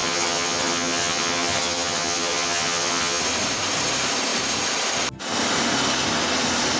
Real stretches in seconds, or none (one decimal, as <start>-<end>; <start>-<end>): 3.2-6.8